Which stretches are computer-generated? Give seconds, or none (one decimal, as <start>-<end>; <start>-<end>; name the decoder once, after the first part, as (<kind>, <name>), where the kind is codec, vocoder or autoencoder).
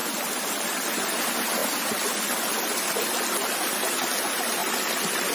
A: none